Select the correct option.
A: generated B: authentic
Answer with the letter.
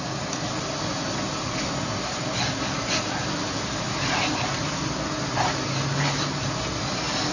B